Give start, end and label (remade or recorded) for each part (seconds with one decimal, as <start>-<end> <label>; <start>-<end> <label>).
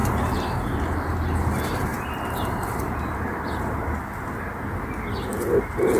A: 0.0-0.8 remade; 0.8-1.9 recorded; 1.9-3.3 remade; 3.3-5.3 recorded; 5.3-6.0 remade